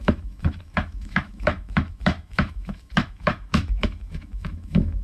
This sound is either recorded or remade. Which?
remade